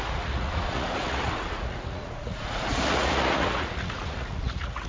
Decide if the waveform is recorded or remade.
remade